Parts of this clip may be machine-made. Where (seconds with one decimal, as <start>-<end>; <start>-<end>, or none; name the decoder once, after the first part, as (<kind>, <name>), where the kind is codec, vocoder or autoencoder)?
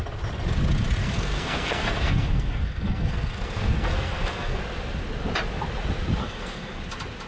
1.0-4.6 (codec, SNAC); 6.2-6.8